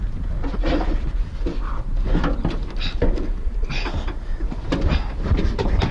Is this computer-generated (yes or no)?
yes